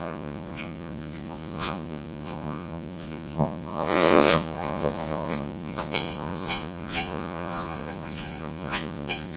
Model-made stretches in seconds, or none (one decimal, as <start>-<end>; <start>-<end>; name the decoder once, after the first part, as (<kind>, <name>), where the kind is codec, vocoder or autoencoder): 0.0-9.4 (vocoder, Vocos)